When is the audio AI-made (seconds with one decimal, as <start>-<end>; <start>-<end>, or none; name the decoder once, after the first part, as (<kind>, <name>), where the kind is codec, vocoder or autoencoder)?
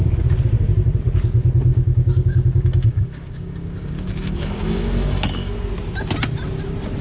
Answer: 1.7-5.5 (codec, DAC)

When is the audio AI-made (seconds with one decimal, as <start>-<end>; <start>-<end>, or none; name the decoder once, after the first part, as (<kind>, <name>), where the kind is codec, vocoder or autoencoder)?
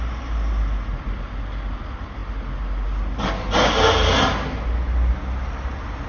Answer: none